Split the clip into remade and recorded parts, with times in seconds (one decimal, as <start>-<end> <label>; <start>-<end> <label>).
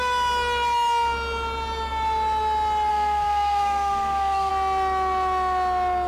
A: 0.0-2.9 recorded; 2.9-4.5 remade; 4.5-6.1 recorded